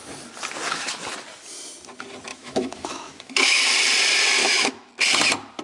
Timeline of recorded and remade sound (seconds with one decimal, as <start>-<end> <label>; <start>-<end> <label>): 0.0-2.3 recorded; 2.3-3.6 remade; 3.6-4.4 recorded; 4.4-4.9 remade; 4.9-5.6 recorded